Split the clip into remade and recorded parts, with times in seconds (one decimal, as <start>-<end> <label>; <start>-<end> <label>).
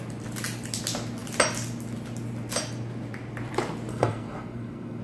0.0-3.9 recorded; 3.9-5.0 remade